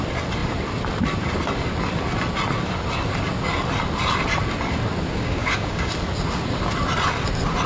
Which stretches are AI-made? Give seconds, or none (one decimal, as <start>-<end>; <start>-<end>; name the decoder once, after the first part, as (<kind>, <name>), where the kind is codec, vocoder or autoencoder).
5.2-5.9 (codec, DAC)